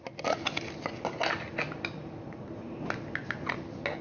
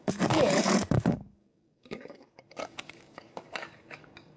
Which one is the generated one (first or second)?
second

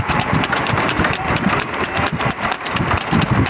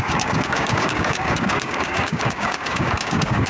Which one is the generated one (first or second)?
second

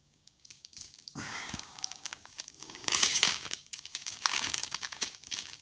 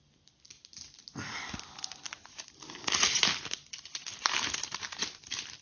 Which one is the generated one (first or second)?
first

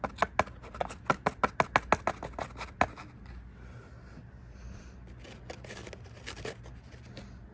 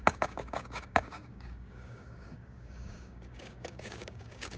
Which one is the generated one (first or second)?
second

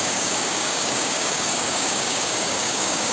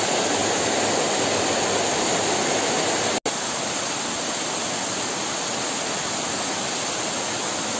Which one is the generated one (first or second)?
first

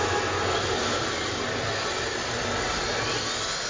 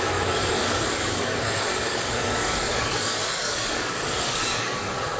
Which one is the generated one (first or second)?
second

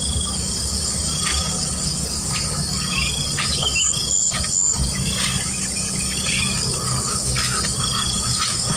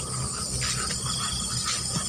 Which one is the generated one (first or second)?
first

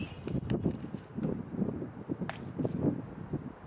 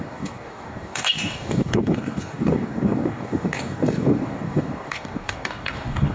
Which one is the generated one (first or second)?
second